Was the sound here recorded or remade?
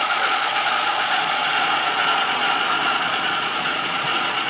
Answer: remade